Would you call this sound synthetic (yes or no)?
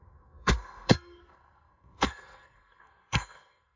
yes